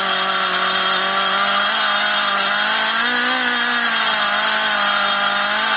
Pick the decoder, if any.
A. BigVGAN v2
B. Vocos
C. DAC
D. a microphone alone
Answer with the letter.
D